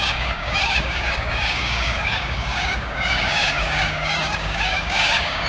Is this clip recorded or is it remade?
remade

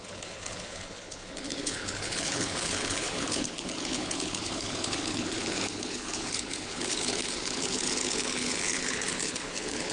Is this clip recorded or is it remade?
remade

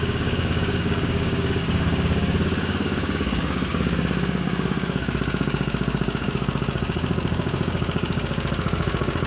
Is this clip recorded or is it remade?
remade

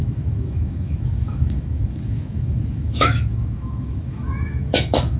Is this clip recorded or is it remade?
remade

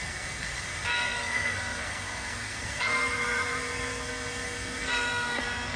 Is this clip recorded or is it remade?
remade